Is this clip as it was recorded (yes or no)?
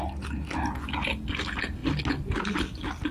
yes